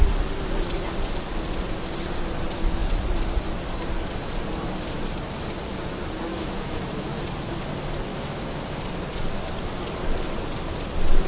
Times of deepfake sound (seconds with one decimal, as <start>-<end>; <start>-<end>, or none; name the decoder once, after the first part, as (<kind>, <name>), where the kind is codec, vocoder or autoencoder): 6.3-7.2 (autoencoder, DAC-VAE); 8.1-8.6